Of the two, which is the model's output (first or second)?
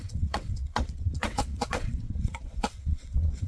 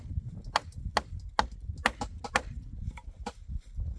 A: first